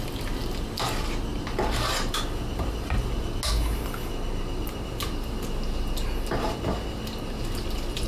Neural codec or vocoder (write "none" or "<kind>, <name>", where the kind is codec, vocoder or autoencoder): none